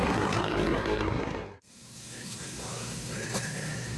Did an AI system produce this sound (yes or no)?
yes